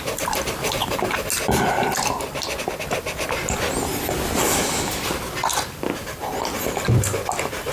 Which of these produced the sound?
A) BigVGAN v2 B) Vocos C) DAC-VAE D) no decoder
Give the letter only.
D